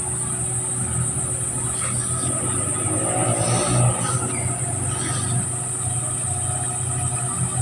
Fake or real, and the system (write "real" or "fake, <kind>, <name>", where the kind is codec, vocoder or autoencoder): real